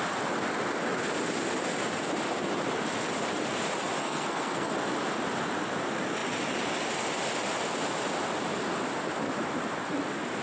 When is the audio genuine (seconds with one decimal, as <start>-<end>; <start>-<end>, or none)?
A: 0.0-4.0; 4.7-10.4